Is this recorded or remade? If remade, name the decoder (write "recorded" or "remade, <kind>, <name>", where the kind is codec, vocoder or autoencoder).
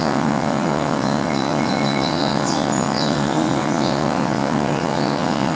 remade, vocoder, WaveNeXt